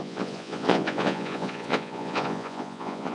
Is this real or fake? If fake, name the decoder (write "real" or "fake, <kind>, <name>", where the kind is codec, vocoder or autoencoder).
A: fake, vocoder, Vocos